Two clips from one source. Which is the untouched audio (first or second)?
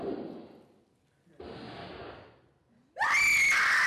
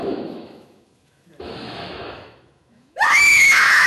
first